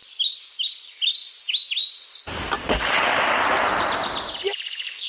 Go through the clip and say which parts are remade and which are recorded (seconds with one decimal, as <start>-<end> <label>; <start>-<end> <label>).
0.0-5.1 recorded